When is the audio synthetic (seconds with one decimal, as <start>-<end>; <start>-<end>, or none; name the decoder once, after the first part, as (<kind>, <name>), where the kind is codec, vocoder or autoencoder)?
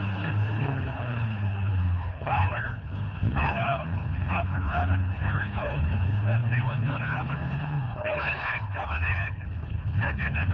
0.0-10.5 (codec, HILCodec)